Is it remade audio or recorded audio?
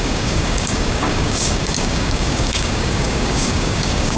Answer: remade